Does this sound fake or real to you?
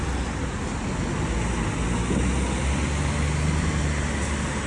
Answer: real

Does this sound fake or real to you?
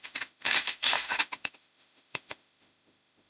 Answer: fake